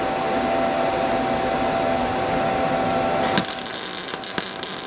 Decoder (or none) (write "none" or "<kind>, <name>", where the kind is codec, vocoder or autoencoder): none